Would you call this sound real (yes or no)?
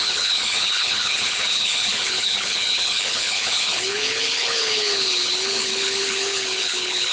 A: no